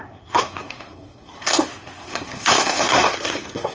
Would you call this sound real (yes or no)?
no